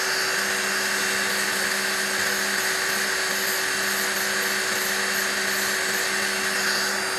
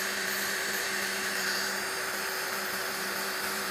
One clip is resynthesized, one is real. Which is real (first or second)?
first